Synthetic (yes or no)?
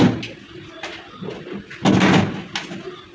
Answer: no